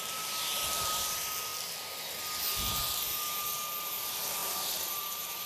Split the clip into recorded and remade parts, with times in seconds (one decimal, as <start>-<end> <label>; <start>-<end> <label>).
0.0-1.5 remade; 1.5-2.8 recorded; 2.8-5.5 remade